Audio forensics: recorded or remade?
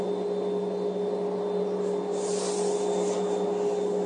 recorded